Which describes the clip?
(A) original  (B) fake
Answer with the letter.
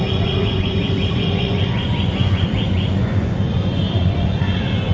B